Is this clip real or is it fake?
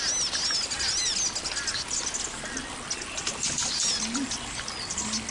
real